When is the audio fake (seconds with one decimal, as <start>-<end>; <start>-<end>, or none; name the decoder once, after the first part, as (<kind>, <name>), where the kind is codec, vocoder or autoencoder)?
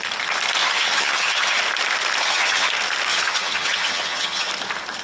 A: 0.6-1.6 (vocoder, HiFi-GAN); 2.2-2.7; 3.1-4.5